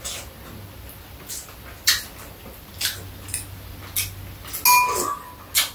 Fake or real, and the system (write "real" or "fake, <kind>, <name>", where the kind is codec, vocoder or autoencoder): real